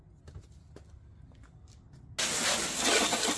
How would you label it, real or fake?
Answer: real